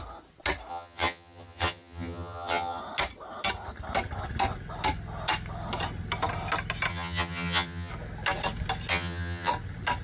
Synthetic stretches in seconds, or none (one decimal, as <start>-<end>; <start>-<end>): 0.7-2.8; 6.9-7.9; 8.9-9.5

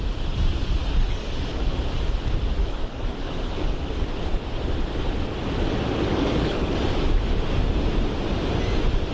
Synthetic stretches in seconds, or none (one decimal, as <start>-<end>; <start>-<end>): 0.8-1.7; 2.6-3.8; 6.1-6.7

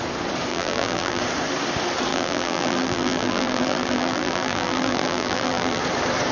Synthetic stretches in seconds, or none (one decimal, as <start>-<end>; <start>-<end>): 0.5-1.2; 2.1-5.8

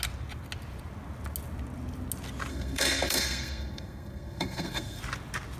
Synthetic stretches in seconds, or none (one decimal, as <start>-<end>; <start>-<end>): 2.5-5.0

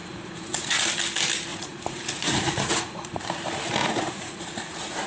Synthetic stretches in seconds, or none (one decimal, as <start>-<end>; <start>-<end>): 0.0-0.8; 1.5-3.2; 3.8-5.1